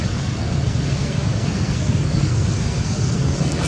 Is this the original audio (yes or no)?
no